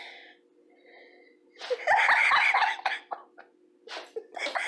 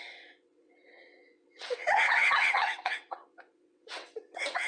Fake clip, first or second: second